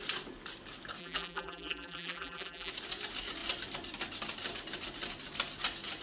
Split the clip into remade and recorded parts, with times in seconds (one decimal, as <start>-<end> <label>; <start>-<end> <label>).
0.0-1.0 recorded; 1.0-2.7 remade; 2.7-6.0 recorded